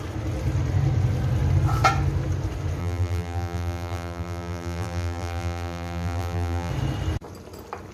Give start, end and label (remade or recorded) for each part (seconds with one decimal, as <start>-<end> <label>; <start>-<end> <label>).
0.0-2.8 recorded; 2.8-6.7 remade; 6.7-7.9 recorded